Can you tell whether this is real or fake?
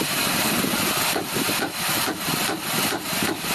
fake